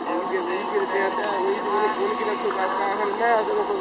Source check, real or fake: real